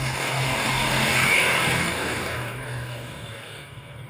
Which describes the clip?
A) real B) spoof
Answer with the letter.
B